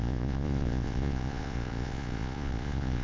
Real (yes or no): no